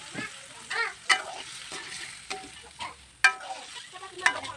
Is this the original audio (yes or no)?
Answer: yes